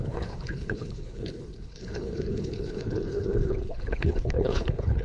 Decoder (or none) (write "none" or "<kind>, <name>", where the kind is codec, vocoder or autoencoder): codec, HILCodec